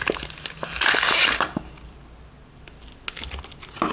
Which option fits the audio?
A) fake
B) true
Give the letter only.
B